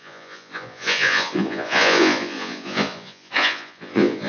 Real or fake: fake